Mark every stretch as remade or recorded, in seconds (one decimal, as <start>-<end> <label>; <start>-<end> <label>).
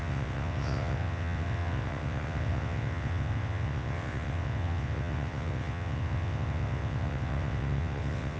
0.0-8.4 remade